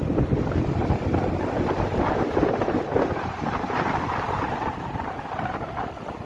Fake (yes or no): no